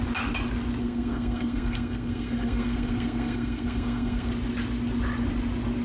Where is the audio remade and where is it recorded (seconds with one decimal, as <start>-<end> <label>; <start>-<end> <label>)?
0.0-0.8 recorded; 0.8-4.3 remade; 4.3-5.8 recorded